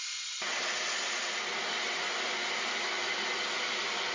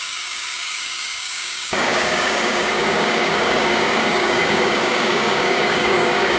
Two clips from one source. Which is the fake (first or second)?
second